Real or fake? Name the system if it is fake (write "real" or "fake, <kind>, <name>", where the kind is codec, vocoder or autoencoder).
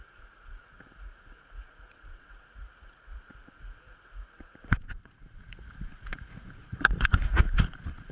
fake, vocoder, Vocos